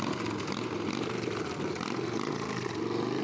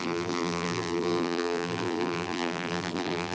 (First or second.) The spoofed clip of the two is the second